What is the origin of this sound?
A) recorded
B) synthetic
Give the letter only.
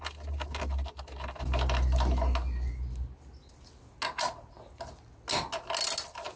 A